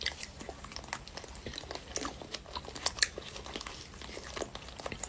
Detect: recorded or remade recorded